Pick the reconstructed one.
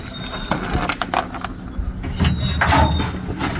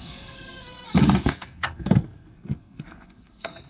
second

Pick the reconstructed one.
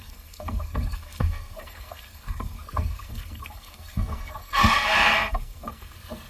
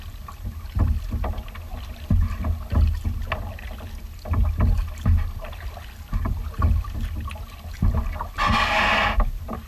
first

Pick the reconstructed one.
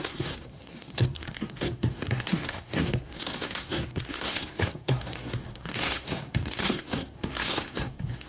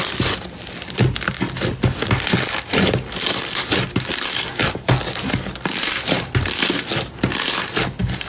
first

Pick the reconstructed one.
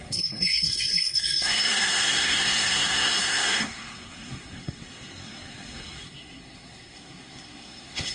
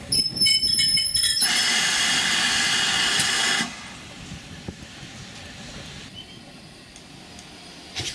first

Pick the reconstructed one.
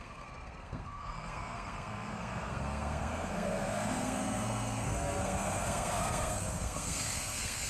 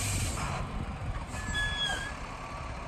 first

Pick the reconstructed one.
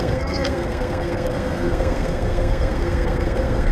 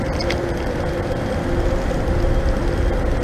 first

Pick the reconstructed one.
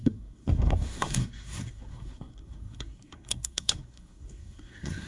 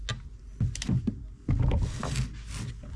first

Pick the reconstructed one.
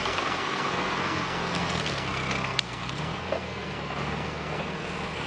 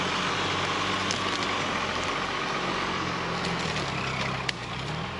first